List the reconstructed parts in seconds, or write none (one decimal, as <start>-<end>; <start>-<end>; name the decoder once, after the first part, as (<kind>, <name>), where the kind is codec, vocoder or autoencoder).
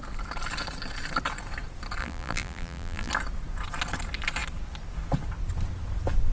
2.0-3.1 (vocoder, BigVGAN v2)